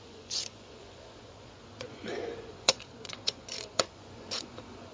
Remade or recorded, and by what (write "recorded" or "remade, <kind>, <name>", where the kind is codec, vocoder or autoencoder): remade, vocoder, Vocos